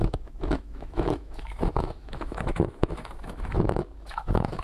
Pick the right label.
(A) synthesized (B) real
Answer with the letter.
A